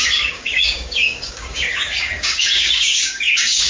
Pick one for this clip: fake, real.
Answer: fake